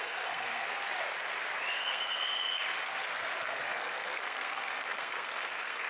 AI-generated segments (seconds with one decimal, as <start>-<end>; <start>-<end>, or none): 0.0-0.7; 1.7-2.6; 3.4-5.9